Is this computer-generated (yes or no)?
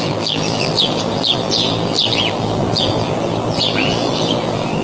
yes